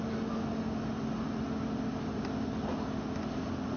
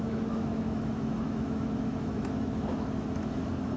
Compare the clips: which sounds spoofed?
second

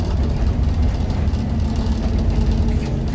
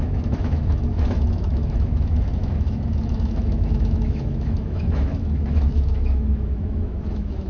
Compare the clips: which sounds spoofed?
second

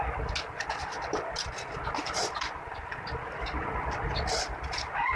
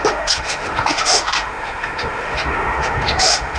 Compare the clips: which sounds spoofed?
second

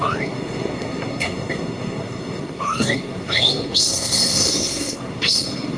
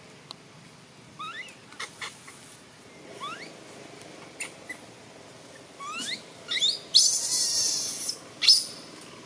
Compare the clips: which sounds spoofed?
first